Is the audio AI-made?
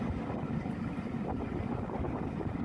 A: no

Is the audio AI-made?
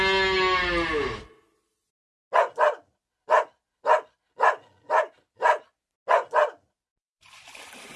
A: no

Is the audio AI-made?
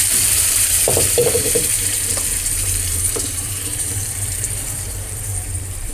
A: yes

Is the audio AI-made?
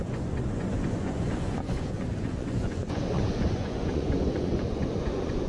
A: yes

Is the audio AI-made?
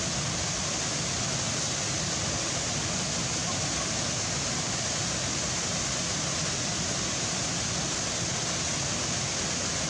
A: no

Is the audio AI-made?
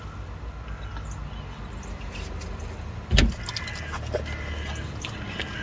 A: no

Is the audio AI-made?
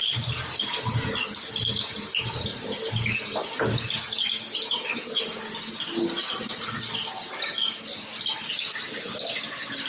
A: no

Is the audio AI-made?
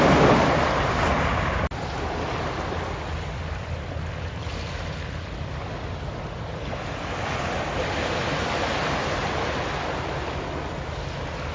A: no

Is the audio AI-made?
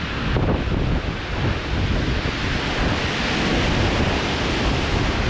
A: no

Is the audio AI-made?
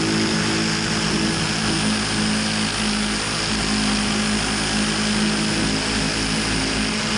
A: no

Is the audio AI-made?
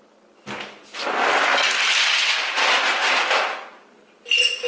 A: no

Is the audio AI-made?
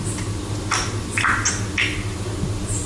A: no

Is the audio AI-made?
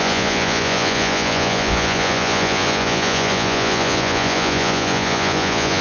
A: yes